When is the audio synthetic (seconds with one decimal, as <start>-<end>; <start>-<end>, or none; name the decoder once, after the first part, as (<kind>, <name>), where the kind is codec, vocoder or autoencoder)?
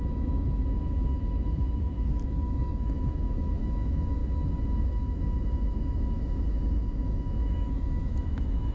0.0-4.2 (autoencoder, DAC-VAE); 4.8-8.7